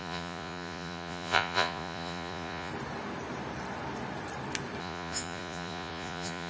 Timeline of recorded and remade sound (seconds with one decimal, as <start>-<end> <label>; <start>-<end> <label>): 0.0-2.7 remade; 2.7-4.8 recorded; 4.8-6.5 remade